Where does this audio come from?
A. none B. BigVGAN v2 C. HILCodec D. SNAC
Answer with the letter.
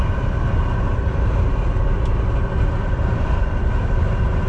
A